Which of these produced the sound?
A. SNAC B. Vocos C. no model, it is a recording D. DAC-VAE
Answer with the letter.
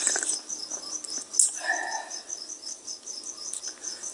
C